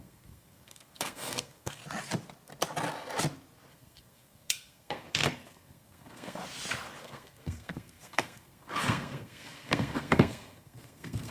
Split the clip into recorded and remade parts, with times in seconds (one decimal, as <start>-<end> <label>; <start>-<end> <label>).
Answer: 0.0-1.8 remade; 1.8-3.7 recorded; 3.7-6.4 remade; 6.4-7.0 recorded; 7.0-11.3 remade